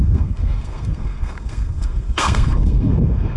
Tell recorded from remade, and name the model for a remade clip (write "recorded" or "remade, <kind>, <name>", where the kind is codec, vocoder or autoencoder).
remade, codec, SNAC